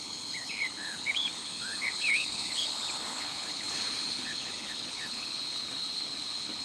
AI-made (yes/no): yes